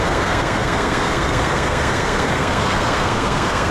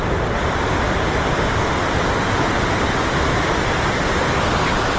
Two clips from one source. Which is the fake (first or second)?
first